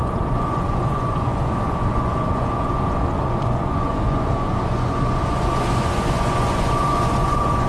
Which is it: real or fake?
fake